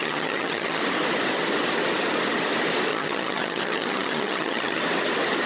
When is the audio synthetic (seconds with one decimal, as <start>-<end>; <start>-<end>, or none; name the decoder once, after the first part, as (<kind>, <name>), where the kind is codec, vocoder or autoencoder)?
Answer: 0.0-0.8 (vocoder, HiFi-GAN); 2.9-4.8